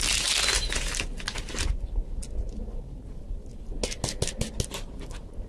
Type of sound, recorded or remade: recorded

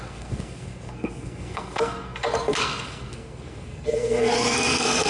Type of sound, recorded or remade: remade